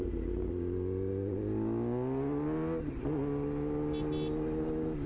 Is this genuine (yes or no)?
yes